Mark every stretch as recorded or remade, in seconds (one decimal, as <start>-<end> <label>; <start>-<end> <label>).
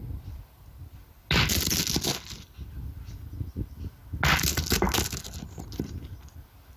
0.0-6.8 recorded